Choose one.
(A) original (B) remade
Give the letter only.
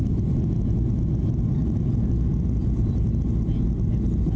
A